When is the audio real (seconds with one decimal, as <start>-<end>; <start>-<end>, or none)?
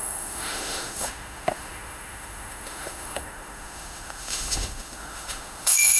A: none